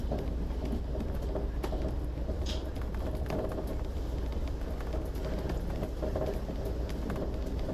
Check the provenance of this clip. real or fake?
real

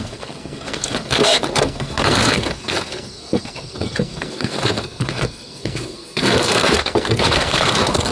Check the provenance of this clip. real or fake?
fake